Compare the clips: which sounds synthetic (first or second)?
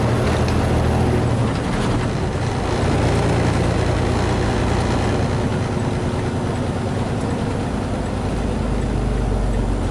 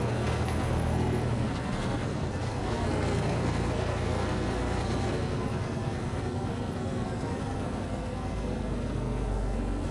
second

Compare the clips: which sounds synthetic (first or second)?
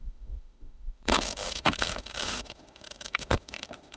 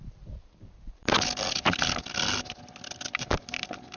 first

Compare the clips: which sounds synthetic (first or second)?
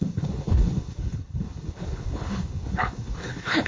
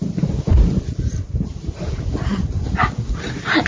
first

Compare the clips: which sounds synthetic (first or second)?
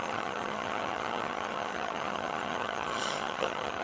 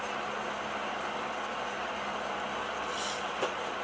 first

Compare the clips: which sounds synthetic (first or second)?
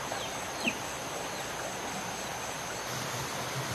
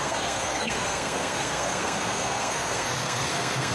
second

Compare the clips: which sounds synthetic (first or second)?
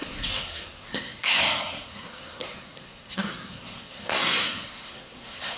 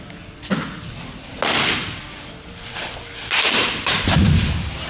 first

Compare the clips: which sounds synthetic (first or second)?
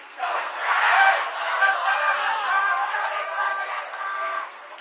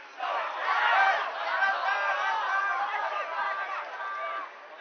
first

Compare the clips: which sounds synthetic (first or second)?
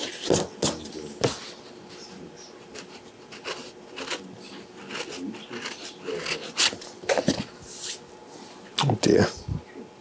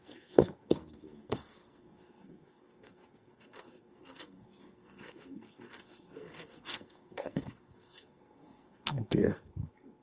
second